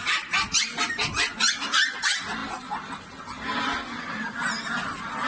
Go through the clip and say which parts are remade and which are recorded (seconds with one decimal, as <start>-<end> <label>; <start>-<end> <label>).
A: 0.0-5.3 recorded